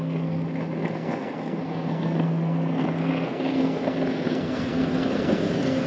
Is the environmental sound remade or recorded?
remade